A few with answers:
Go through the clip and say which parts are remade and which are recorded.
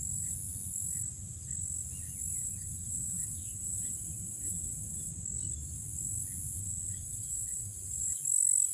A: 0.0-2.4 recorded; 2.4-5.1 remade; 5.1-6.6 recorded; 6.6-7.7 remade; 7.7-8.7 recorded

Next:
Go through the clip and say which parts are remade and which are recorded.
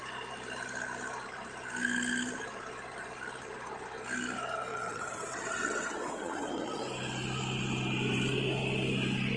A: 0.0-4.7 recorded; 4.7-6.8 remade; 6.8-9.4 recorded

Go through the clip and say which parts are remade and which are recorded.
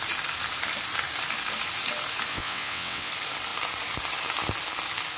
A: 0.0-2.3 recorded; 2.3-3.1 remade; 3.1-5.2 recorded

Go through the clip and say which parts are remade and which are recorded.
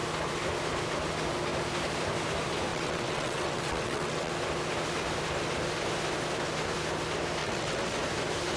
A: 0.0-2.7 recorded; 2.7-4.3 remade; 4.3-7.4 recorded; 7.4-8.0 remade; 8.0-8.6 recorded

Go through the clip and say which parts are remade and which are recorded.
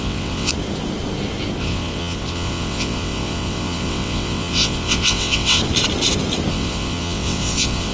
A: 0.0-0.5 remade; 0.5-1.6 recorded; 1.6-5.6 remade; 5.6-6.5 recorded; 6.5-7.9 remade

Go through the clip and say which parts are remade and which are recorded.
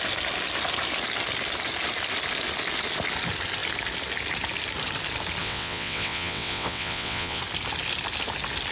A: 0.0-5.4 recorded; 5.4-7.4 remade; 7.4-8.7 recorded